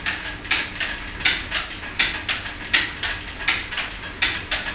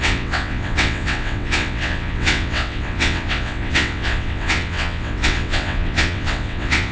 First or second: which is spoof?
second